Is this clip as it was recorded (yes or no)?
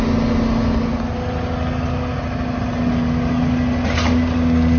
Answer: yes